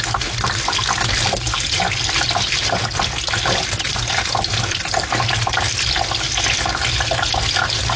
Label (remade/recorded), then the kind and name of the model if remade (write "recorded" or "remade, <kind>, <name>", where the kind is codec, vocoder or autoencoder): recorded